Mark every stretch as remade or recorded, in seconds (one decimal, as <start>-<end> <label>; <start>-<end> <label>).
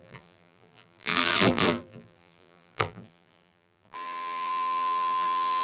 0.0-5.6 remade